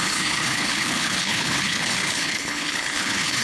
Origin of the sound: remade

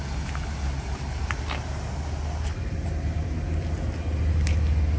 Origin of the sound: recorded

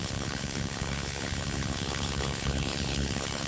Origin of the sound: remade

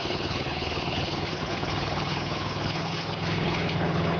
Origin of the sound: remade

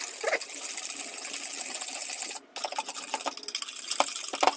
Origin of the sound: recorded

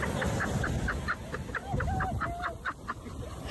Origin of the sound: recorded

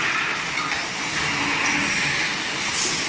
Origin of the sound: recorded